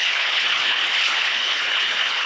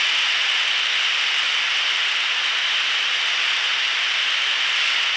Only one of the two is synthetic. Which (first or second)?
first